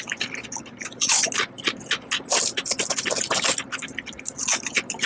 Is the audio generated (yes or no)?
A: no